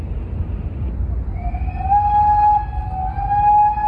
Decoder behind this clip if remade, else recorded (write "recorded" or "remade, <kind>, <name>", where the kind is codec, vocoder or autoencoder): recorded